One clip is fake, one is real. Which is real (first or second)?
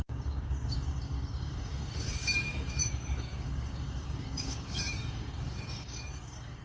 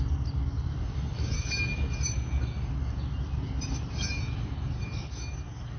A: second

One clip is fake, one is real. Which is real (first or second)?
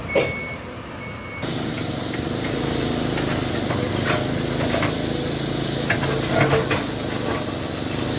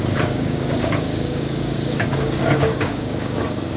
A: first